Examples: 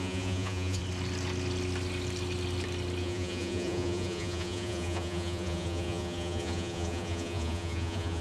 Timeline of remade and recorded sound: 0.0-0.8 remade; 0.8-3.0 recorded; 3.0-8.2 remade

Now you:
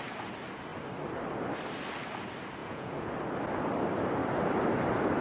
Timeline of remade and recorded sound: 0.0-2.6 recorded; 2.6-3.1 remade; 3.1-5.2 recorded

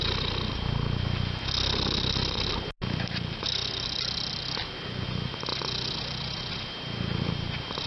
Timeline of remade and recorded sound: 0.0-7.9 recorded

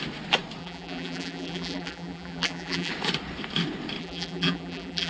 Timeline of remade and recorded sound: 0.0-0.6 recorded; 0.6-2.9 remade; 2.9-4.0 recorded; 4.0-5.1 remade

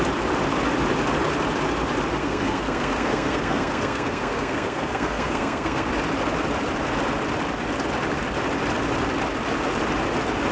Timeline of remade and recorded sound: 0.0-2.2 recorded; 2.2-5.9 remade; 5.9-10.5 recorded

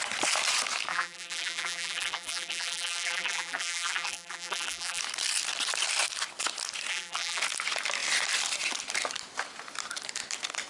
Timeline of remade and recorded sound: 0.0-0.9 recorded; 0.9-5.0 remade; 5.0-6.9 recorded; 6.9-7.4 remade; 7.4-10.7 recorded

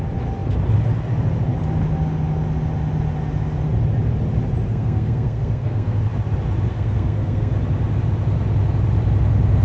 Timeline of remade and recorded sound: 0.0-4.7 recorded; 4.7-6.0 remade; 6.0-6.7 recorded; 6.7-7.5 remade; 7.5-9.6 recorded

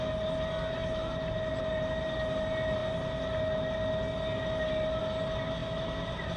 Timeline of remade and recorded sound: 0.0-6.4 recorded